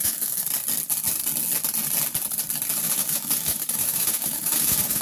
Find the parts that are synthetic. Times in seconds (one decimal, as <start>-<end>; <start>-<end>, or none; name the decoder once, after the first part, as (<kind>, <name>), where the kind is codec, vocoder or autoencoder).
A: 0.0-0.4 (autoencoder, DAC-VAE); 2.8-5.0